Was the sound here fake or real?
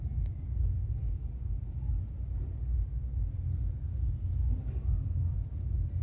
real